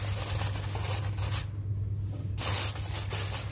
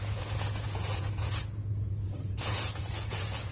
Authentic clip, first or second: first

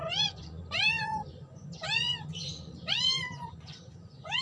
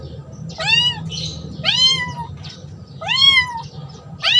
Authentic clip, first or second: second